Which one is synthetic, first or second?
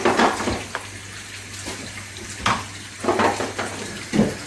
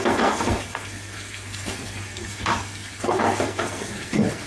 second